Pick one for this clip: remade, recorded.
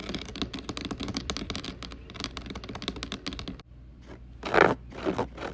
recorded